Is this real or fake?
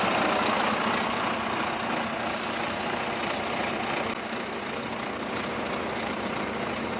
real